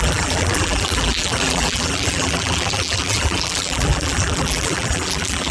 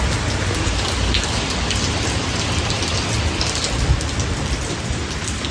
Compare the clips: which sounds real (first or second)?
second